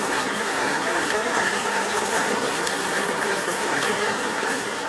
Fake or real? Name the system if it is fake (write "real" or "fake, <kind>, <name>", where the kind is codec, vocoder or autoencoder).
fake, codec, SNAC